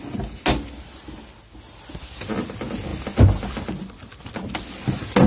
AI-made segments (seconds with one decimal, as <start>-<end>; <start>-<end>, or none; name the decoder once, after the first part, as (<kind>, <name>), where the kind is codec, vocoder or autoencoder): none